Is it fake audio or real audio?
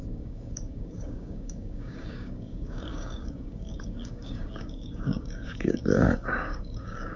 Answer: fake